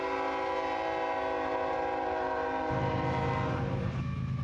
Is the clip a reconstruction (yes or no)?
no